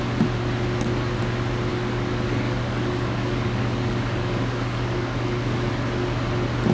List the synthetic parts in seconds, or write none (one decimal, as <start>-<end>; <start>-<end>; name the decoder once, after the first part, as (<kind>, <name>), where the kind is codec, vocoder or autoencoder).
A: 1.7-5.7 (codec, DAC)